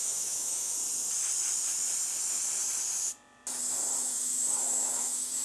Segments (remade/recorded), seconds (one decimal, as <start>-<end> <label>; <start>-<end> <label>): 0.0-0.8 remade; 0.8-4.0 recorded; 4.0-5.4 remade